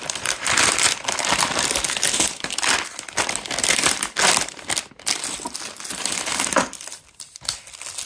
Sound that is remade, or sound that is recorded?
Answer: recorded